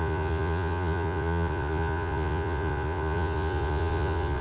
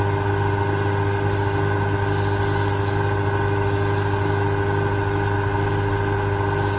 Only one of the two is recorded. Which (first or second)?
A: second